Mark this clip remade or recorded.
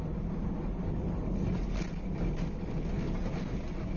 recorded